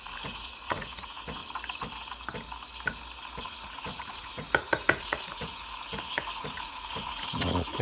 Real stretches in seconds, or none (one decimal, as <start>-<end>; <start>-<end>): 1.4-3.4

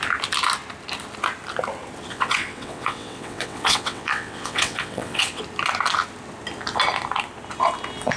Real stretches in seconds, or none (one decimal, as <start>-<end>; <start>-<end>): 0.0-2.1; 5.4-8.2

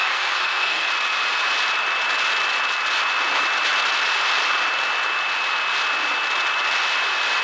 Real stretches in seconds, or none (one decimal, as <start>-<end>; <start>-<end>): 0.9-7.4

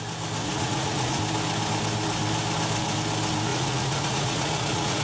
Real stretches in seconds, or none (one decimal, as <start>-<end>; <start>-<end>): 0.0-0.4; 1.2-3.5

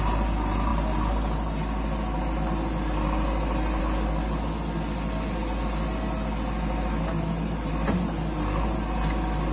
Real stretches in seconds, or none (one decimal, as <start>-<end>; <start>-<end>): 0.0-9.5

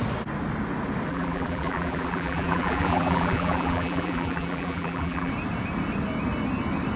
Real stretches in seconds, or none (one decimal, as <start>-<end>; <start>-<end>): 0.0-1.1; 5.3-7.0